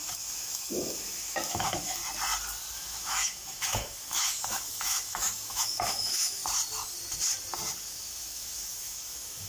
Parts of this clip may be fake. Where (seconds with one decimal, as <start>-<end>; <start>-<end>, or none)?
0.0-2.0; 2.7-6.4; 7.8-9.5